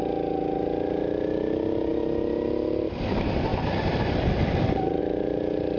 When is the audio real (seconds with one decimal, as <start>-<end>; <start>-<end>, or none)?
0.0-3.5; 5.0-5.8

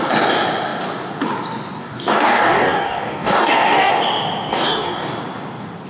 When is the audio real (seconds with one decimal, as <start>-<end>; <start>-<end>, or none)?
0.0-1.8; 3.9-4.5; 5.1-5.9

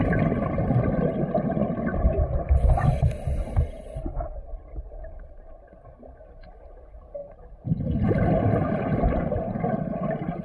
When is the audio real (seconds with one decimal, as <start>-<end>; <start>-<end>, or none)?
0.0-1.6; 5.1-7.2; 9.8-10.4

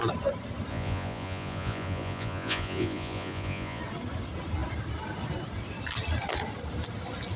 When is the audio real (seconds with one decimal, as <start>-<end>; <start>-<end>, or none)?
0.0-0.7; 3.8-7.4

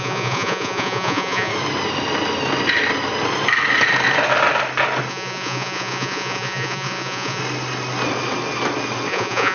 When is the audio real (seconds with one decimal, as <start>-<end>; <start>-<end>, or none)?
1.5-5.1; 7.4-9.1